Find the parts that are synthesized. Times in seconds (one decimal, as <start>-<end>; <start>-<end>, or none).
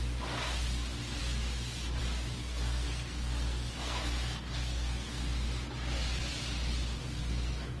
2.4-5.2; 7.0-7.8